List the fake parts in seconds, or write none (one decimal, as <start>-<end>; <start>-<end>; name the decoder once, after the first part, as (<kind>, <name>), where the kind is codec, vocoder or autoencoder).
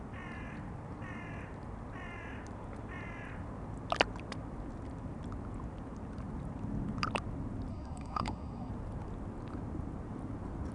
7.7-8.7 (codec, SNAC)